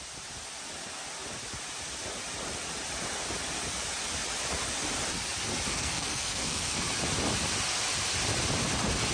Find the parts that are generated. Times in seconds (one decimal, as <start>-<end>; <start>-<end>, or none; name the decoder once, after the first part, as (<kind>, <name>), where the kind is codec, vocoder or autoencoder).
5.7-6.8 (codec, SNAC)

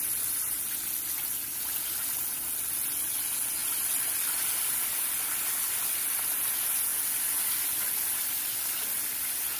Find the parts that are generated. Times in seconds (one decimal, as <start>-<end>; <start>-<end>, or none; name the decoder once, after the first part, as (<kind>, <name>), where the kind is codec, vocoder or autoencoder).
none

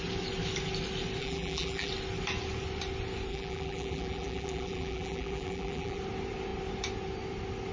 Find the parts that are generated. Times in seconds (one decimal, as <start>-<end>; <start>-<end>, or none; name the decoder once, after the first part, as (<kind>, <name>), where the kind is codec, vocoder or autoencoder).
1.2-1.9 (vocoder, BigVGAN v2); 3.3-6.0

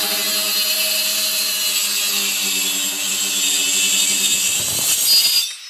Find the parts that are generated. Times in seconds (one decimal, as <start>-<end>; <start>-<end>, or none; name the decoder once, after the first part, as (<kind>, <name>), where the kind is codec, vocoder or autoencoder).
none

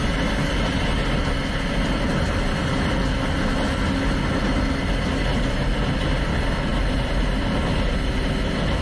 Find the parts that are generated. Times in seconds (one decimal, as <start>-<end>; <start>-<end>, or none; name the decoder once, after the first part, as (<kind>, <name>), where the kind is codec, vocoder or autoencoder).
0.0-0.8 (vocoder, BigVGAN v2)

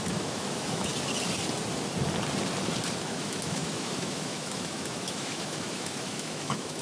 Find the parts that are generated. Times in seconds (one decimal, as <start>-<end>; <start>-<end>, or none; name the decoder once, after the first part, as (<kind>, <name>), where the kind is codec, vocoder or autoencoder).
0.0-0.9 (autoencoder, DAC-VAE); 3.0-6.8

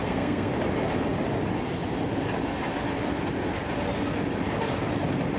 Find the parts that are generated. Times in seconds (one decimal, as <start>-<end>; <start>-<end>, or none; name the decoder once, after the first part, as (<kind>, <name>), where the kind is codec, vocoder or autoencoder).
0.0-0.5 (codec, SNAC)

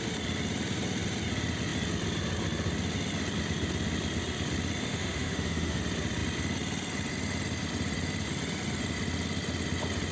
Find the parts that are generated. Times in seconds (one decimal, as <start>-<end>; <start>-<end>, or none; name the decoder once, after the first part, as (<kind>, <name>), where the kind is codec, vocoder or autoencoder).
4.8-5.8 (autoencoder, DAC-VAE)